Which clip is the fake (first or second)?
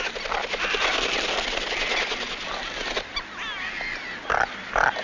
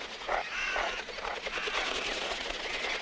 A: second